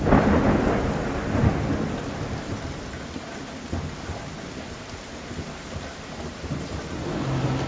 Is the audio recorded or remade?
recorded